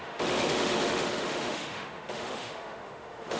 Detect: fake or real fake